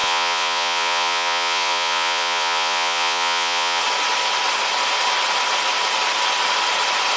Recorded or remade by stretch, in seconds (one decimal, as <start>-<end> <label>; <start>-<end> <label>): 0.0-3.8 remade; 3.8-7.2 recorded